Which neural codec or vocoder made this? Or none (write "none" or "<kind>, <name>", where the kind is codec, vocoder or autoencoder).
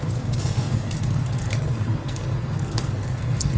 codec, SNAC